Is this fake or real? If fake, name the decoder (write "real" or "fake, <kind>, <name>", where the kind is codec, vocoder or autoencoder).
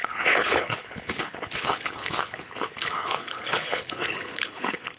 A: fake, codec, HILCodec